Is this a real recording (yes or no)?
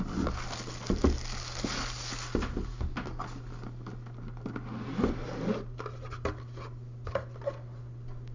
yes